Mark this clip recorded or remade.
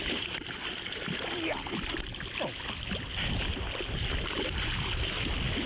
recorded